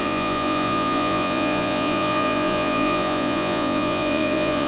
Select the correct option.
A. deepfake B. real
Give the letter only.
A